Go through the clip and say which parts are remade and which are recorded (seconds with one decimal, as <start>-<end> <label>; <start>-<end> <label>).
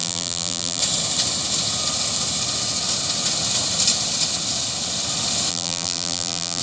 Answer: 0.0-0.8 remade; 0.8-5.5 recorded; 5.5-6.6 remade